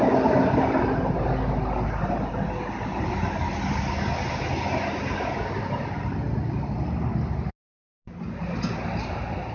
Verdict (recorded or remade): recorded